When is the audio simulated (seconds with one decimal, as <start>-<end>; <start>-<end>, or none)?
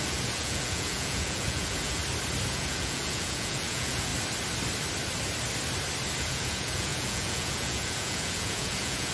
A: 0.0-2.0; 2.5-4.1; 6.2-9.1